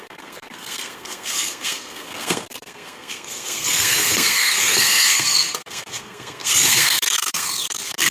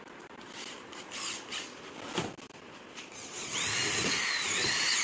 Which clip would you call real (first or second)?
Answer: second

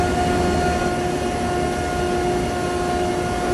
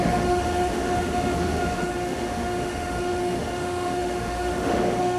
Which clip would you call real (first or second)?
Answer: first